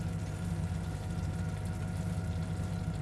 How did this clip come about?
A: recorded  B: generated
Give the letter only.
A